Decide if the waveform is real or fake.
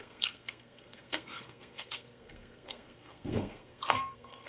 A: fake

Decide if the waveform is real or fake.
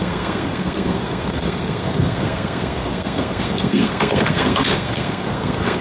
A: fake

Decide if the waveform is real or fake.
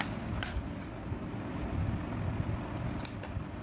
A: real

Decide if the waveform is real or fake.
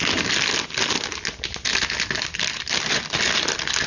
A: real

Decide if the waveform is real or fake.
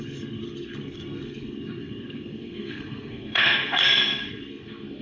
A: fake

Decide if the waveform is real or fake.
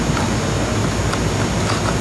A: real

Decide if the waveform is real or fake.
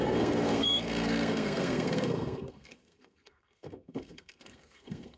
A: fake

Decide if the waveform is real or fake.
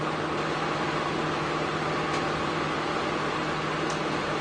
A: real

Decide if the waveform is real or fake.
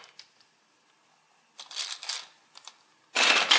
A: real